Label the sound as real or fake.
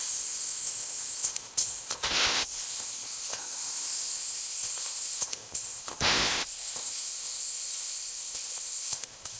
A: fake